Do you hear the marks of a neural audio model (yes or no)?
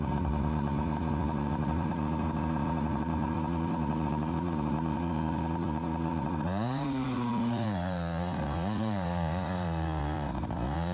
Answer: yes